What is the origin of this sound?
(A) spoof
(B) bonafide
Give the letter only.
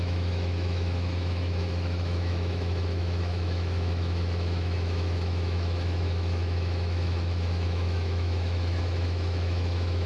A